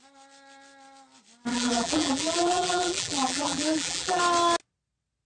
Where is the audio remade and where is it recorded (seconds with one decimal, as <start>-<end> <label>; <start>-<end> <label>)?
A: 0.0-1.5 recorded; 1.5-4.2 remade; 4.2-5.2 recorded